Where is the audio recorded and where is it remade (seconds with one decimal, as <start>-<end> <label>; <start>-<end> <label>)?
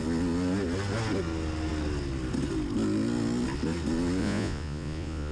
0.0-4.2 recorded; 4.2-5.3 remade